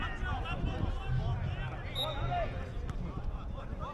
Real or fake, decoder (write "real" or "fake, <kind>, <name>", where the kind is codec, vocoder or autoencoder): real